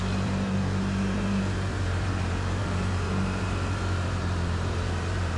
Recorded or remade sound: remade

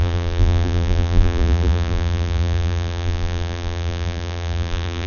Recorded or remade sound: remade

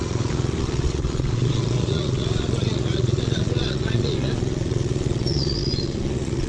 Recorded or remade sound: remade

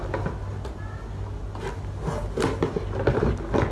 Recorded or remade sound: recorded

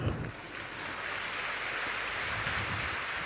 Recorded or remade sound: recorded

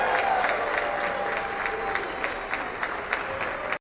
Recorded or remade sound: recorded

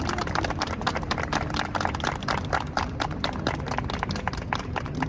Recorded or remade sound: remade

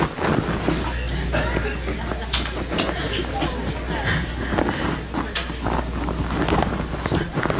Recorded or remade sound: recorded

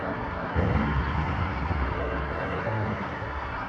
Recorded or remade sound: remade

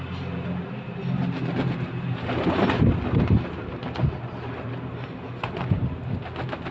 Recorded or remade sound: recorded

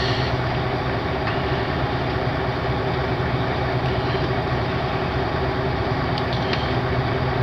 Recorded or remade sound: recorded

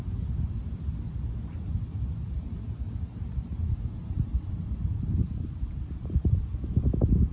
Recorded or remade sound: recorded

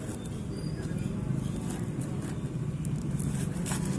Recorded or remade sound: recorded